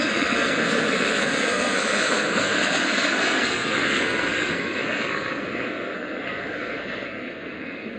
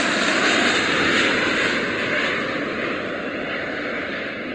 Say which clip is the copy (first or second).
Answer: first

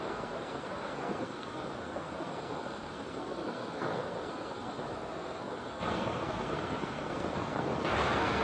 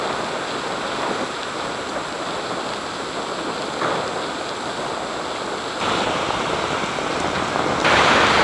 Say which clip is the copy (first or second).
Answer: first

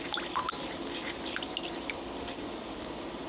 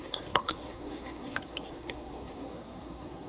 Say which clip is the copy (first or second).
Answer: second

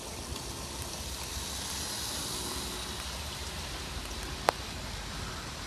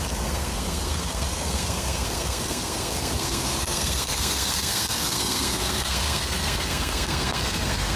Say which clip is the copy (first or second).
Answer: second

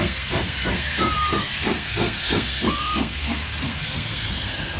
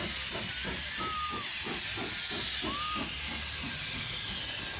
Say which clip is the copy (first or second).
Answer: first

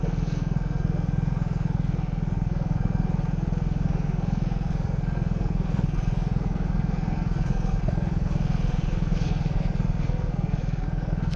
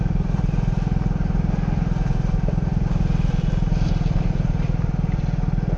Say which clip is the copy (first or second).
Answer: first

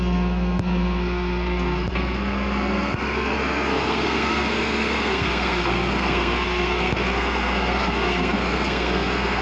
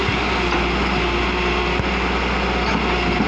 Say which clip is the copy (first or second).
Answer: first